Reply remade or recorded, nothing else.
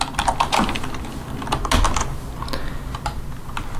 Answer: recorded